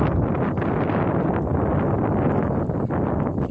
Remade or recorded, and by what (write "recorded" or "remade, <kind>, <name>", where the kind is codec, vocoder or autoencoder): recorded